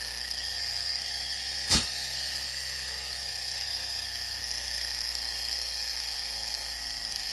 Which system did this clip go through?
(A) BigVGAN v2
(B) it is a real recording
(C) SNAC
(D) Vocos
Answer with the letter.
C